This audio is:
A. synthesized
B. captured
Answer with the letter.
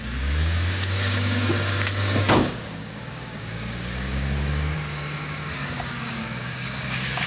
A